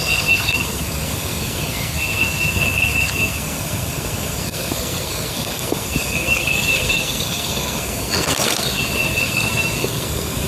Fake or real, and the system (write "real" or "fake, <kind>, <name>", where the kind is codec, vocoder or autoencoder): fake, codec, SNAC